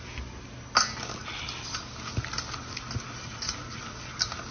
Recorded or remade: recorded